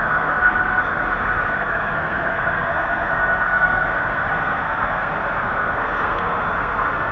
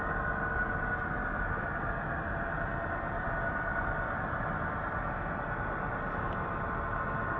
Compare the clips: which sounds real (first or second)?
second